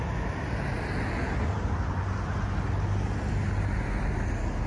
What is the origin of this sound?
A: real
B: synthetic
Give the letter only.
A